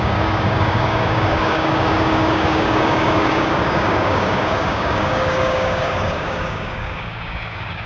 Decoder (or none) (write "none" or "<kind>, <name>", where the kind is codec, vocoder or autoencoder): codec, DAC